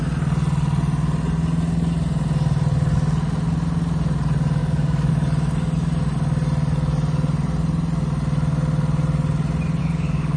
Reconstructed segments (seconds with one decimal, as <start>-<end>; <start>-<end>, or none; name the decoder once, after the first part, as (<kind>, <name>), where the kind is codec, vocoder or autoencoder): 4.6-5.1 (codec, DAC); 9.8-10.4